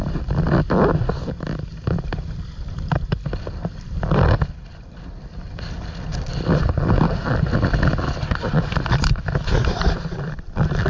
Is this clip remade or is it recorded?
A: recorded